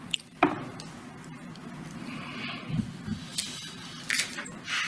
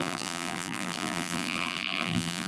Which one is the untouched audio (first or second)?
first